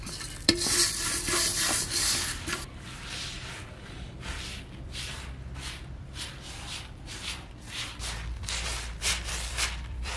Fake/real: fake